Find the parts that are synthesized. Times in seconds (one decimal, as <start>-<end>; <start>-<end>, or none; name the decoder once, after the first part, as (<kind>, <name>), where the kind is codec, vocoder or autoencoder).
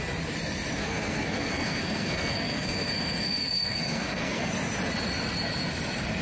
0.8-4.5 (codec, SNAC)